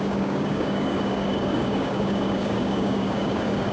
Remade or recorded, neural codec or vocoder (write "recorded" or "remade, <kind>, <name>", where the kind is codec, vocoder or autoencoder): remade, codec, DAC